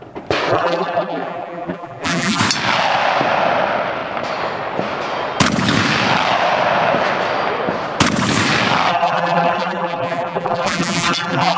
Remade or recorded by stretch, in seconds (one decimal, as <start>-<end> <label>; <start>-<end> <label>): 0.0-0.5 recorded; 0.5-2.4 remade; 2.4-8.9 recorded; 8.9-11.6 remade